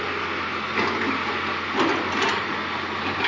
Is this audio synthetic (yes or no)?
no